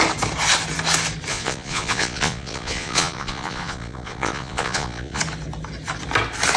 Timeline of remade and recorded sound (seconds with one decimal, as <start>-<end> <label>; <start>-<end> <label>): 0.0-1.3 recorded; 1.3-5.2 remade; 5.2-6.6 recorded